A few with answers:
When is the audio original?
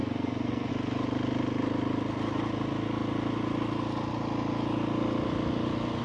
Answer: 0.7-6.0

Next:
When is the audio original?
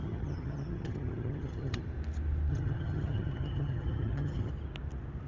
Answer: 1.8-2.5; 4.5-5.3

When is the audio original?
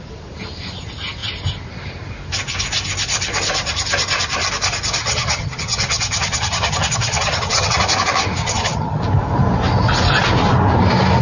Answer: 0.0-5.0; 7.8-8.4; 9.0-11.2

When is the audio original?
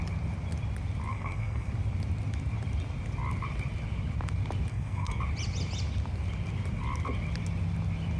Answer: 0.0-1.1; 1.7-4.7; 5.2-8.2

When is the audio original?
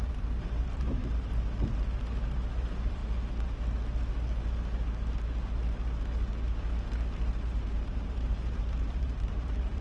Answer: 1.0-2.5; 3.0-7.7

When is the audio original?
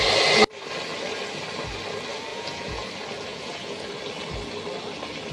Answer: 0.0-2.3; 2.9-3.3; 3.9-5.3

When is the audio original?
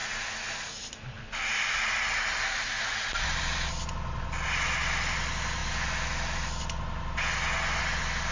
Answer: 1.0-8.3